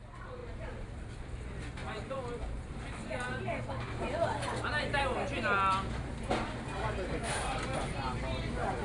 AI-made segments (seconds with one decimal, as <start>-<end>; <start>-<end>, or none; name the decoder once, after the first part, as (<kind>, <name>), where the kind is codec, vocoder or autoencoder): 0.4-1.1 (vocoder, BigVGAN v2); 1.8-4.7